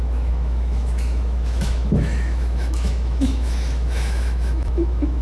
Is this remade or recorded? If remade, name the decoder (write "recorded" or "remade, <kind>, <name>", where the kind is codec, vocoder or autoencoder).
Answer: remade, autoencoder, DAC-VAE